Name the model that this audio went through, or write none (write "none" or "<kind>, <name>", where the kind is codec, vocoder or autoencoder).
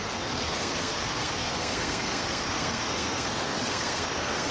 codec, SNAC